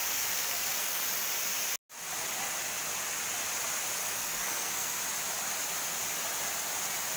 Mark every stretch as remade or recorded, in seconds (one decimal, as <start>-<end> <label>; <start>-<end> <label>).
0.0-1.0 remade; 1.0-4.0 recorded; 4.0-5.0 remade; 5.0-7.2 recorded